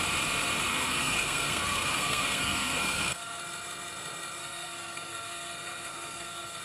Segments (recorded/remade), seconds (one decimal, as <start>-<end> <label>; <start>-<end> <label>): 0.0-0.7 recorded; 0.7-3.4 remade; 3.4-4.4 recorded; 4.4-6.6 remade